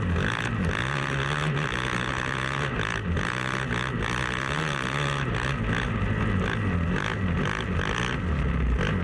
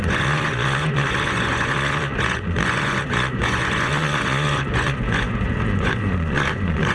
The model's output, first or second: second